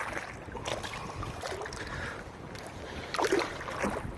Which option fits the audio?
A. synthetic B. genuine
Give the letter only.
B